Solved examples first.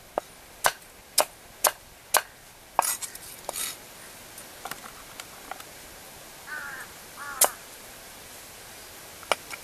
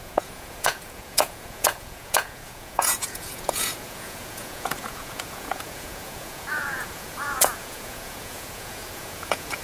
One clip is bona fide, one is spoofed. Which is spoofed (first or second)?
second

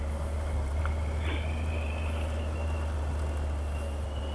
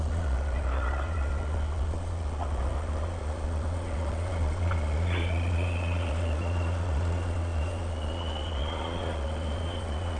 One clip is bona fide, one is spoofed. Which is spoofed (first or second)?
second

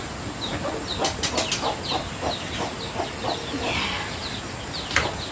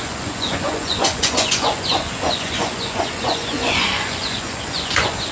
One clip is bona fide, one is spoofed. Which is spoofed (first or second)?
second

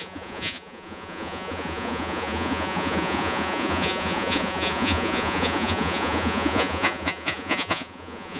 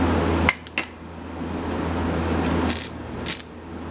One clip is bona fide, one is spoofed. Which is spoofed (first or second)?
first